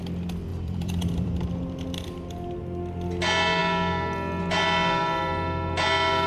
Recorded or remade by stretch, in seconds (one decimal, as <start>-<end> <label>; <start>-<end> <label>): 0.0-0.5 recorded; 0.5-1.3 remade; 1.3-6.3 recorded